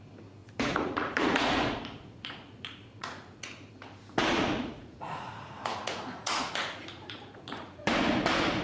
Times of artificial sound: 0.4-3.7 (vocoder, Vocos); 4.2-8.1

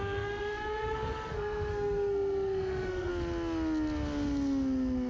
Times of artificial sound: 0.0-3.1 (codec, SNAC)

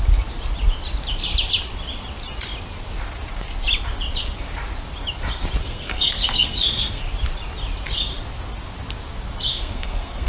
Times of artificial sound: 5.6-7.0 (codec, SNAC); 9.5-10.3

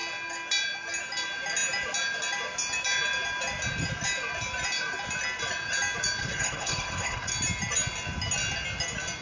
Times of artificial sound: 6.2-7.3 (codec, HILCodec)

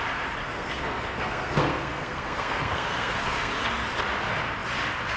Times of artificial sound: 0.4-3.5 (codec, SNAC)

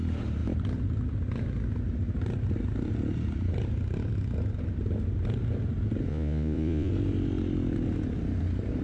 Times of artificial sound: 6.1-6.9 (vocoder, Vocos)